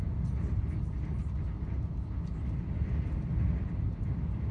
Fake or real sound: real